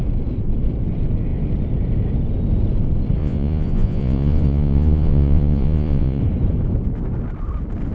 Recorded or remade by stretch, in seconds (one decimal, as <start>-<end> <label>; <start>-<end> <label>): 0.0-3.2 recorded; 3.2-6.2 remade; 6.2-7.9 recorded